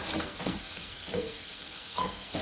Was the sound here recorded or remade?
remade